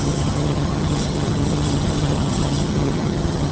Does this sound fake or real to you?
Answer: fake